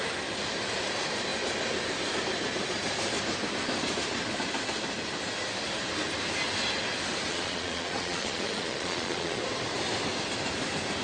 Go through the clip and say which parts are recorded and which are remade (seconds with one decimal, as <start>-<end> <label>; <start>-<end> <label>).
0.0-7.3 recorded; 7.3-9.4 remade; 9.4-11.0 recorded